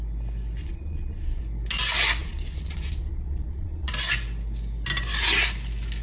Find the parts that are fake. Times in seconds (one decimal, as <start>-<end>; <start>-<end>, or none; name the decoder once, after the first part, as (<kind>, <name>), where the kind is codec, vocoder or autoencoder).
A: 0.6-1.4 (vocoder, Vocos); 2.2-3.9